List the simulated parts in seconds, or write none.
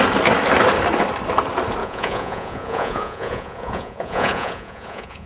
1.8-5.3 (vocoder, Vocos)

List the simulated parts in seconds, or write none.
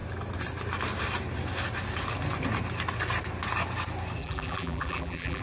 4.2-5.4 (vocoder, BigVGAN v2)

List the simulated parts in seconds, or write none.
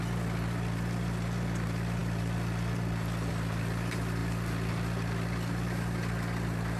0.0-2.0 (vocoder, BigVGAN v2); 3.3-4.2; 4.7-6.8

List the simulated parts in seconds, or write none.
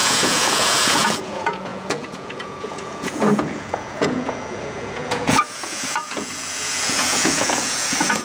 0.0-8.2 (vocoder, Vocos)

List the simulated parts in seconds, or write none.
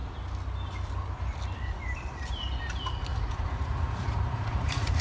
3.1-5.0 (vocoder, Vocos)